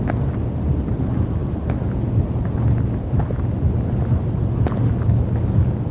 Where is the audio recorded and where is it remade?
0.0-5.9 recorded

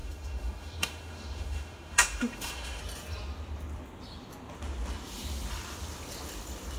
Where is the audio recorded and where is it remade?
0.0-2.8 remade; 2.8-6.8 recorded